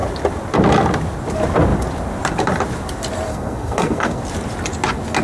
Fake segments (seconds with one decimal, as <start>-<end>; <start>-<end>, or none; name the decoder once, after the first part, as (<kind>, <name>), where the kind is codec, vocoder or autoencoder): 3.3-4.2 (codec, SNAC)